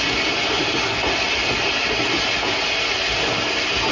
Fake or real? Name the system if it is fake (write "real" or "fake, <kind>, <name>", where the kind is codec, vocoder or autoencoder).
real